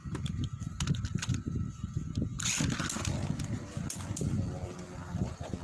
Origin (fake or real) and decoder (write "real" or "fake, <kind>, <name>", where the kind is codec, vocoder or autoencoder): real